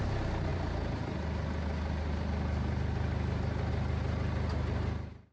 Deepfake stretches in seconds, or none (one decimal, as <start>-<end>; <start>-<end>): none